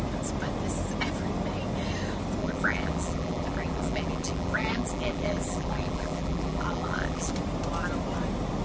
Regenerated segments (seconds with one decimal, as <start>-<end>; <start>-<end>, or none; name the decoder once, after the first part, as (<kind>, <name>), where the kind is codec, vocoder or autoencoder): 2.4-7.3 (vocoder, BigVGAN v2)